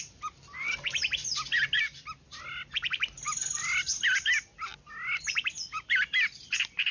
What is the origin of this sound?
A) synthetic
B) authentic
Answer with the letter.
B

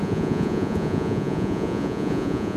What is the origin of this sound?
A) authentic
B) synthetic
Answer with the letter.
B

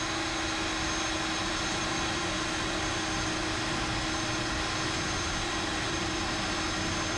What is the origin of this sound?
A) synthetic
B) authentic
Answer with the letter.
B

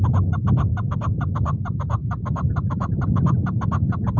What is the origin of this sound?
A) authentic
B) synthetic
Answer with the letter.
A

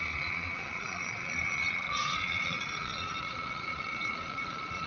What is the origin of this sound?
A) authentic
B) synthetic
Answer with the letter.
B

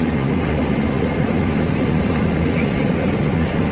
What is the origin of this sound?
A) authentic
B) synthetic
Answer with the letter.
B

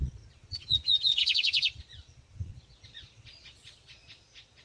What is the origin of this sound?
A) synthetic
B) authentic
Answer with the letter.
A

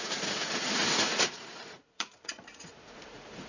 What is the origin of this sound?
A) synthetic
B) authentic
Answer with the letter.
A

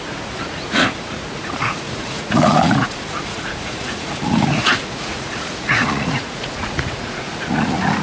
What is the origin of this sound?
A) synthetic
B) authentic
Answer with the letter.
A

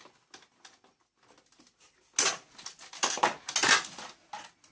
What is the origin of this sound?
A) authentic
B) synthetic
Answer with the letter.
A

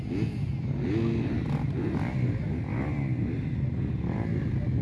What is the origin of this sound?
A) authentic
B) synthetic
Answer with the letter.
A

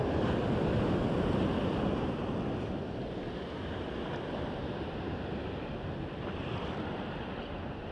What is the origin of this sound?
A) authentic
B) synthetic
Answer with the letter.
A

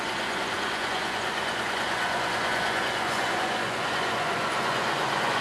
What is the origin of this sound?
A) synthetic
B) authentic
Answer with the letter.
A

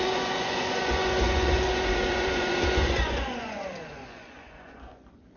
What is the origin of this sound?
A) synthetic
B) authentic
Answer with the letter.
A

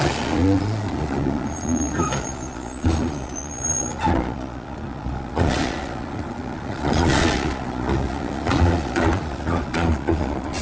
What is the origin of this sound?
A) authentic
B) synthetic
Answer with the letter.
B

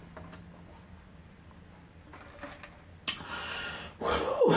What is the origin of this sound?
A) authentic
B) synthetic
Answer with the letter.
A